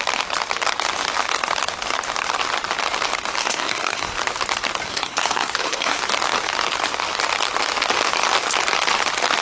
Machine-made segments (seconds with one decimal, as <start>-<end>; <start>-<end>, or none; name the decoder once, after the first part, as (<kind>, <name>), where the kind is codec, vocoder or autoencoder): 3.4-4.0 (codec, SNAC); 4.9-6.0